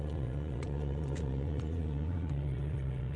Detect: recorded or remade remade